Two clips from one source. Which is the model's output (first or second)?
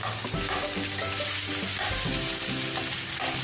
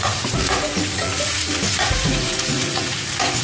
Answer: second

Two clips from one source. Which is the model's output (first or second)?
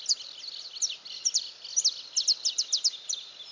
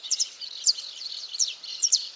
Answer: second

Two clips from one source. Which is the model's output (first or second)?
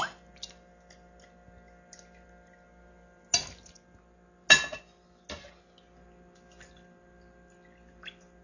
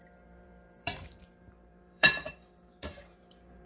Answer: second